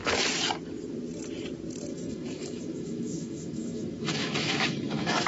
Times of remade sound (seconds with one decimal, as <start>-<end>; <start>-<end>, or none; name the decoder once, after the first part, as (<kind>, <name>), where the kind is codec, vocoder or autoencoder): 1.9-5.3 (autoencoder, DAC-VAE)